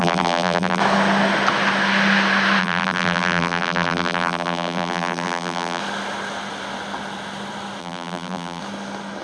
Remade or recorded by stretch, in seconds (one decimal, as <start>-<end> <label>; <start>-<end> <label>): 0.0-0.8 remade; 0.8-2.6 recorded; 2.6-5.8 remade; 5.8-7.8 recorded; 7.8-8.6 remade; 8.6-9.2 recorded